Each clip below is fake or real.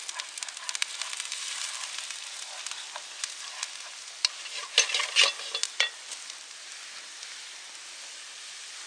real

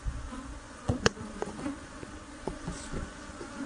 fake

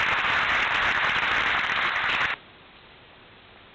real